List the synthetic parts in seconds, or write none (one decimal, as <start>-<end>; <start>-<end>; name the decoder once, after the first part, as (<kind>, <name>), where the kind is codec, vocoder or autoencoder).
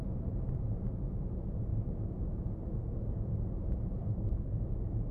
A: 4.0-4.6 (codec, SNAC)